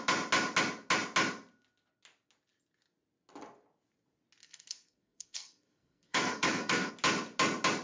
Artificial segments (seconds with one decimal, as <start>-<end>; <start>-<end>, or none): 4.4-6.9